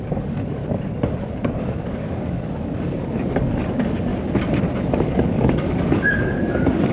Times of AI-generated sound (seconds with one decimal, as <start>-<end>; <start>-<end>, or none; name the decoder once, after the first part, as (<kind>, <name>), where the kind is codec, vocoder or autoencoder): 0.0-0.6 (codec, DAC); 1.2-4.1; 4.9-6.9